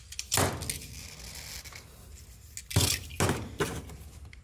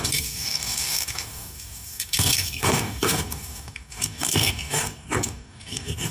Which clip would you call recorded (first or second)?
first